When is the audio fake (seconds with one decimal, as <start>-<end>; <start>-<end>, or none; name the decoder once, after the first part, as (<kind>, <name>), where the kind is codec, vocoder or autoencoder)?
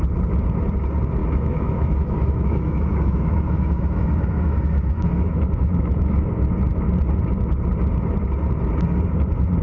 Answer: 1.2-6.2 (autoencoder, DAC-VAE)